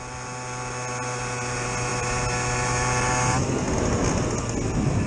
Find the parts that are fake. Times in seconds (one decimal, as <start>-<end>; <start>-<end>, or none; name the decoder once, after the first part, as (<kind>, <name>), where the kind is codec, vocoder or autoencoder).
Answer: none